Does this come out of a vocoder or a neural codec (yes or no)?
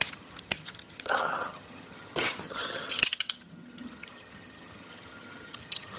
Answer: yes